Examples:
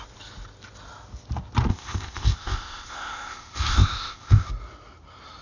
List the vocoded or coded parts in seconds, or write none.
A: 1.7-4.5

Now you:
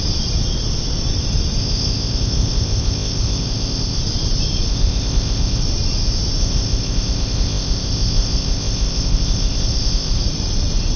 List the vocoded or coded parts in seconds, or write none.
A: 1.6-4.0; 4.7-5.6; 6.4-10.2

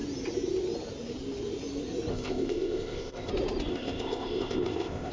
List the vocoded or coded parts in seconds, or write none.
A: 2.1-3.3; 3.7-5.1

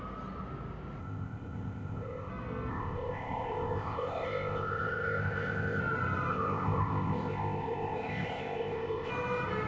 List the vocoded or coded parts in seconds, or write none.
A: 1.0-2.3; 2.7-5.8; 6.3-9.1